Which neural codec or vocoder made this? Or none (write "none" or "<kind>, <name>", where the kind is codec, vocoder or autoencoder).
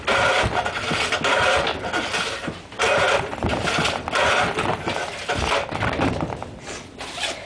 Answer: none